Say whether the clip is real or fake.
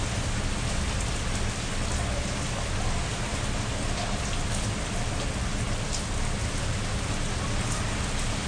real